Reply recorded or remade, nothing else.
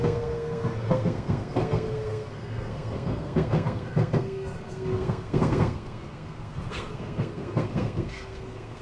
remade